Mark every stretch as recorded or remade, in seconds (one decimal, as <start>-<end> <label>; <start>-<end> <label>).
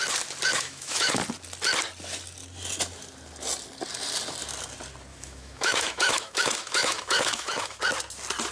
0.0-0.5 recorded; 0.5-1.1 remade; 1.1-5.1 recorded; 5.1-7.8 remade; 7.8-8.5 recorded